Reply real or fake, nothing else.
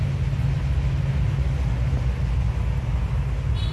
real